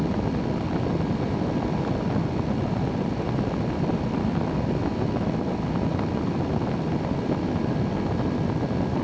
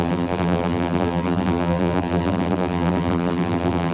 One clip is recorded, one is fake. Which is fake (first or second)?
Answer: second